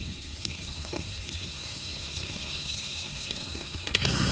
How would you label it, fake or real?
fake